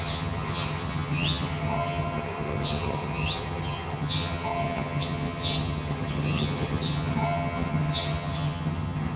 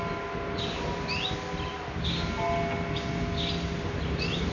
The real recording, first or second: second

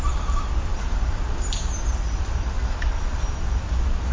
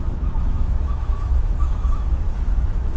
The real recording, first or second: first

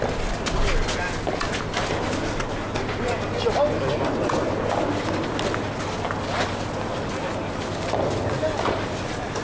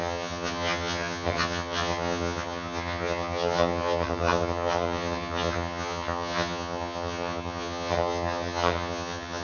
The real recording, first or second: first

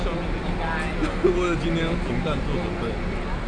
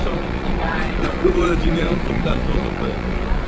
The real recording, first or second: first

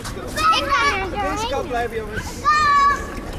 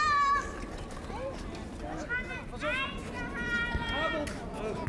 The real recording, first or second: second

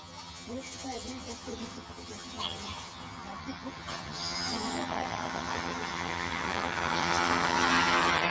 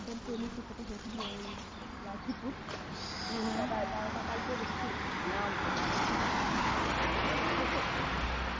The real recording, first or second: second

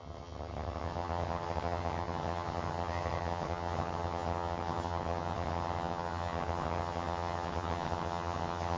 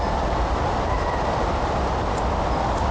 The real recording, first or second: second